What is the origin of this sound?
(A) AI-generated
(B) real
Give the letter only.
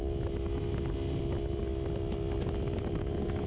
B